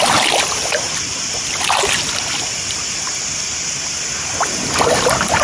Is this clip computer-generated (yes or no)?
no